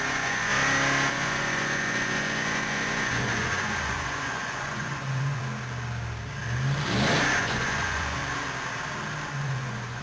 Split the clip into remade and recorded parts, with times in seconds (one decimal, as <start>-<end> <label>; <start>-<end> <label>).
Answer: 0.0-0.5 remade; 0.5-1.1 recorded; 1.1-5.4 remade; 5.4-7.4 recorded; 7.4-8.2 remade; 8.2-9.3 recorded; 9.3-10.0 remade